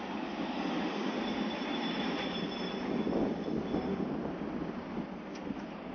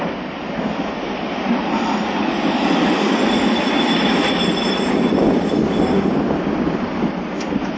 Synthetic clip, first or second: second